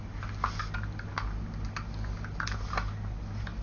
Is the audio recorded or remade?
recorded